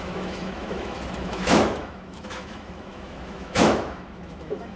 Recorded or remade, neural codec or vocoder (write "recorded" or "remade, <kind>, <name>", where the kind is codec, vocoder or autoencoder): remade, autoencoder, DAC-VAE